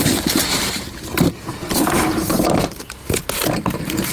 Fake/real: fake